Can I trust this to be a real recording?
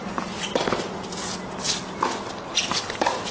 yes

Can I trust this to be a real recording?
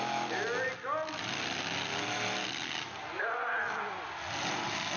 yes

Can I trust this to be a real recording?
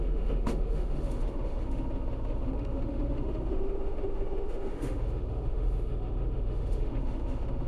no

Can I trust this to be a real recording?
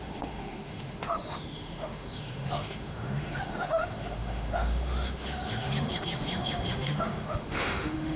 no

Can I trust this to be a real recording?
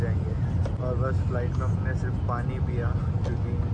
yes